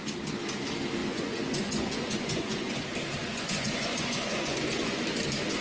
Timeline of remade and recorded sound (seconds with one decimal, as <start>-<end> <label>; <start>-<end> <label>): 0.0-1.0 recorded; 1.0-2.8 remade; 2.8-3.2 recorded; 3.2-5.0 remade; 5.0-5.6 recorded